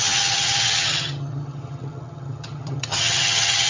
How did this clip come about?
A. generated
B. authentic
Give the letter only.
A